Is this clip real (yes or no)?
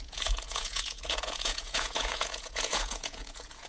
no